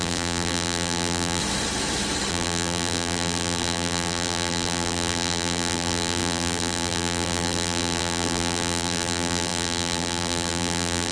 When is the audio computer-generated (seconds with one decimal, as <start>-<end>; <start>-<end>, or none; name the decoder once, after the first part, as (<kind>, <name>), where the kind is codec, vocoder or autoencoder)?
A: 0.0-1.4 (vocoder, BigVGAN v2); 2.3-11.1